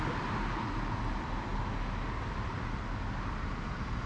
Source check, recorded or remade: recorded